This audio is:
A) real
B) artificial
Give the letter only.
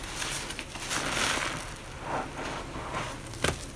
A